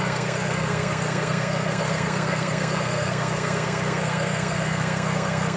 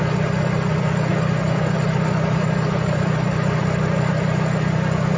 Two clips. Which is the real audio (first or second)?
second